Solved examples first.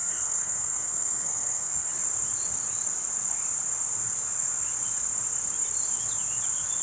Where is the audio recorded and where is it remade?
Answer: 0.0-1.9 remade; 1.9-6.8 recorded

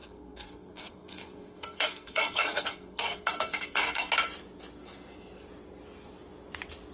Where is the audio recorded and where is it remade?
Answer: 0.0-4.1 remade; 4.1-6.9 recorded

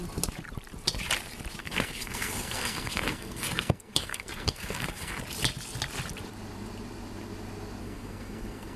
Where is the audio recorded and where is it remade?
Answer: 0.0-1.6 recorded; 1.6-5.2 remade; 5.2-7.8 recorded; 7.8-8.8 remade

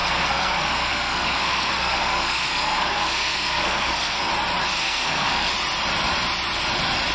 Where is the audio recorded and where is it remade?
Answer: 0.0-4.3 remade; 4.3-4.8 recorded; 4.8-5.5 remade; 5.5-7.1 recorded

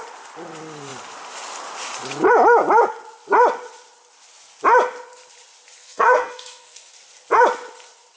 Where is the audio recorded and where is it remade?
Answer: 0.0-5.8 recorded; 5.8-6.9 remade; 6.9-8.2 recorded

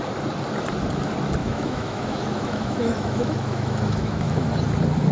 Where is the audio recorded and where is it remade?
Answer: 0.0-1.4 recorded; 1.4-4.5 remade; 4.5-5.1 recorded